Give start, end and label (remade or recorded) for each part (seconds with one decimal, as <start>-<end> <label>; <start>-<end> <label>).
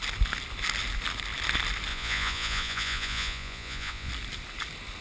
0.0-1.9 recorded; 1.9-4.1 remade; 4.1-5.0 recorded